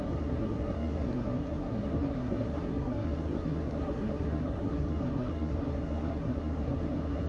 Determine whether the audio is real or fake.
fake